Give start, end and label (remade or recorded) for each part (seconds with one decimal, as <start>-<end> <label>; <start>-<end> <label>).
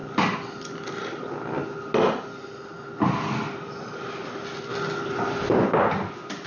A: 0.0-6.5 recorded